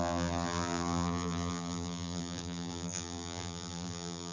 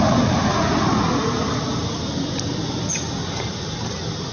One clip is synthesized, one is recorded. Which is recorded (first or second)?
second